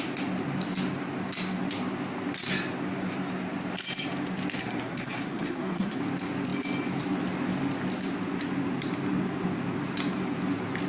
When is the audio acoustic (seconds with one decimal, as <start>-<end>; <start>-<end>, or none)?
0.0-4.6; 6.0-10.9